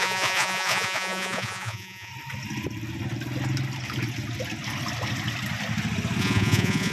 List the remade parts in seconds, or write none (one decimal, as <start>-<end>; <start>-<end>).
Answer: 0.0-2.1; 6.2-6.9